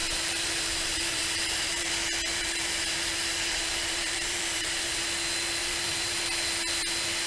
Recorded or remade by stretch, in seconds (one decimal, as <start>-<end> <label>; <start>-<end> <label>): 0.0-1.9 remade; 1.9-2.3 recorded; 2.3-5.1 remade; 5.1-5.6 recorded; 5.6-6.2 remade; 6.2-7.3 recorded